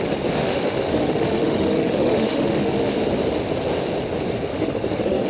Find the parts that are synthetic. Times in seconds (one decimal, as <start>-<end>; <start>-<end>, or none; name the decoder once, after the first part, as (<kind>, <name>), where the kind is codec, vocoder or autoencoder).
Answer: 0.4-2.8 (autoencoder, DAC-VAE); 4.5-5.3